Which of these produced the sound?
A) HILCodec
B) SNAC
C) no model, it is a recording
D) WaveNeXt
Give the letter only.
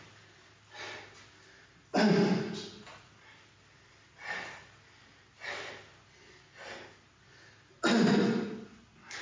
C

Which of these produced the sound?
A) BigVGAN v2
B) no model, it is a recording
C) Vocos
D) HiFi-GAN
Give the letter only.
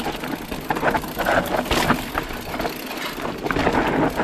B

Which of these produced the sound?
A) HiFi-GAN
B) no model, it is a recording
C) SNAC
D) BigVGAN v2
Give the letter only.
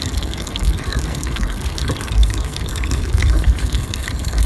C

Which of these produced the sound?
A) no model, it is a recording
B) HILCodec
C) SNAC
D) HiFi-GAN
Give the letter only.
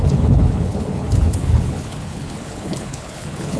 B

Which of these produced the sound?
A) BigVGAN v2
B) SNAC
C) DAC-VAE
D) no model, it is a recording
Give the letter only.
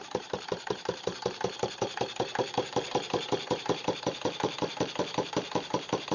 A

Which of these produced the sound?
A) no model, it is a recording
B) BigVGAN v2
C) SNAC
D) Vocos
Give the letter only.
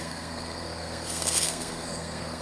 C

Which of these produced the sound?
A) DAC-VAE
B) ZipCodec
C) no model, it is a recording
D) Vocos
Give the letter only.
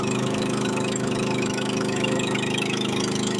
A